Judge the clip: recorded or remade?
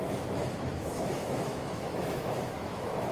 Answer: remade